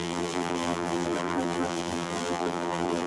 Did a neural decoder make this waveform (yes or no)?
yes